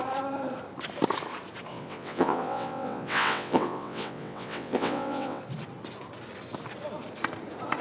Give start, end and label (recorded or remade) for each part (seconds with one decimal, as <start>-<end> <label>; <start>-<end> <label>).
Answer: 0.0-1.7 recorded; 1.7-5.4 remade; 5.4-7.8 recorded